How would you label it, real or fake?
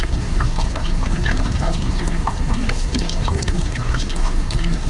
fake